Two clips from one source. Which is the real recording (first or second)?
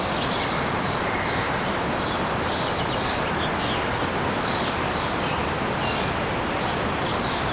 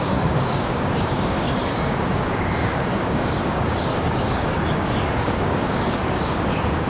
first